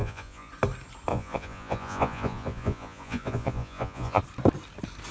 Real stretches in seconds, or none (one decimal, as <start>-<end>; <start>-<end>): 0.5-1.1; 4.2-5.1

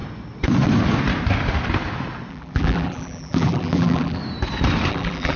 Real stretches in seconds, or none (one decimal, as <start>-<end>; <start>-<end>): 0.0-2.3; 4.2-4.9

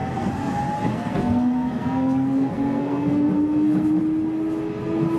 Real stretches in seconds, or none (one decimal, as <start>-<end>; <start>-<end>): 0.5-0.9; 4.0-5.2

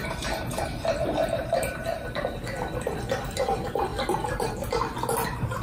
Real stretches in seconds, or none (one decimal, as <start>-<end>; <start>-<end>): 2.0-5.6

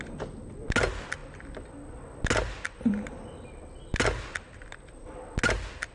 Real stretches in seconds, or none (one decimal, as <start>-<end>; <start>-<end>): 0.0-5.9

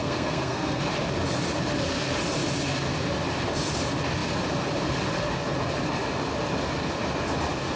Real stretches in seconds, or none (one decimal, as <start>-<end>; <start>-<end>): 0.8-7.8